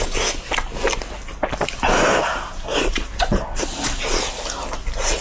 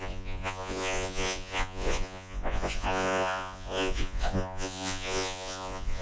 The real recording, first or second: first